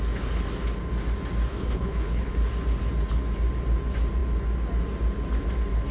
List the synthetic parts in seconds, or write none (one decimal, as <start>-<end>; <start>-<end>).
1.5-2.3